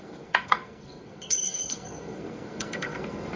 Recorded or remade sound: remade